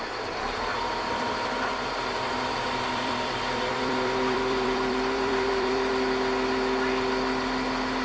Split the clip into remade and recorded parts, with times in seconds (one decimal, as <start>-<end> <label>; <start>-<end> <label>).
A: 0.0-2.3 recorded; 2.3-5.9 remade; 5.9-8.0 recorded